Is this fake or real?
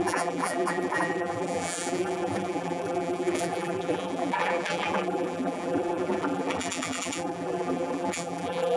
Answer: fake